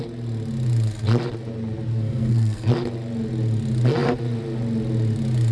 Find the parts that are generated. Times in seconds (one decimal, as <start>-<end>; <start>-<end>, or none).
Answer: 1.9-2.7